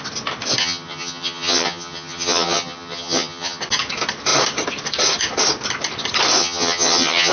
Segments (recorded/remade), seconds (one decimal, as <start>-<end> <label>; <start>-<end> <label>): 0.0-0.6 recorded; 0.6-3.6 remade; 3.6-6.4 recorded; 6.4-7.3 remade